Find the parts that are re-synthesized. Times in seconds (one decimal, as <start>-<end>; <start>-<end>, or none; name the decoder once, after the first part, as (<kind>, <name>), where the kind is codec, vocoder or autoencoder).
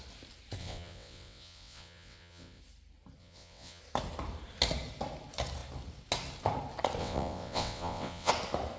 0.6-2.6 (vocoder, WaveNeXt); 3.2-3.8; 7.0-8.3